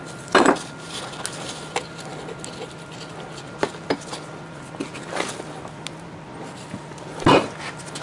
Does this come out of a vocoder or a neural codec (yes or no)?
no